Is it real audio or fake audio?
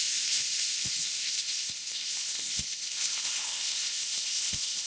fake